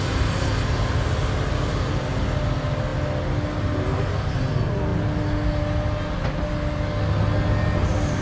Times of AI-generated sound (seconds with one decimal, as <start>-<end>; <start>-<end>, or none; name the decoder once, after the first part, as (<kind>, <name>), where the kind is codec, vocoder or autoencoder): none